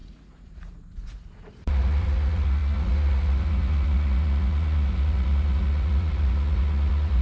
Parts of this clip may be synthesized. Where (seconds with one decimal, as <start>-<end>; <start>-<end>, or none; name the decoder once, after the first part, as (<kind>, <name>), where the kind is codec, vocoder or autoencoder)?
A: 0.0-7.2 (vocoder, Vocos)